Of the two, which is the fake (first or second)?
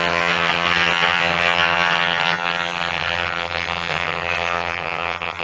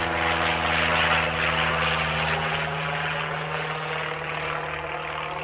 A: first